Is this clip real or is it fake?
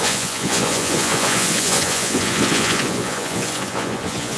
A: fake